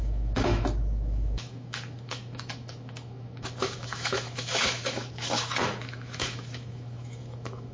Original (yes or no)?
no